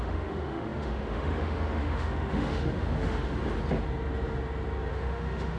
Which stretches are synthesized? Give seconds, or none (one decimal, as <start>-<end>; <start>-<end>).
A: 0.0-3.4; 4.9-5.6